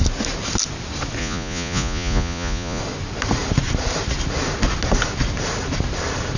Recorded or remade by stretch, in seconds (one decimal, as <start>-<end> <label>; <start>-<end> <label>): 0.0-1.2 recorded; 1.2-2.8 remade; 2.8-6.4 recorded